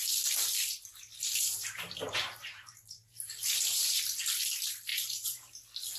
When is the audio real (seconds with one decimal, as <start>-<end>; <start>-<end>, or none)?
0.0-1.3; 4.0-4.9; 5.5-6.0